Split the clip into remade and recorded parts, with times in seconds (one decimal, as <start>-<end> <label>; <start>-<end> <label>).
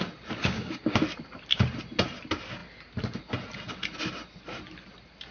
0.0-0.4 recorded; 0.4-1.0 remade; 1.0-5.3 recorded